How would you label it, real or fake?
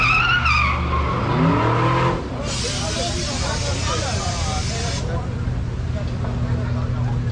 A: real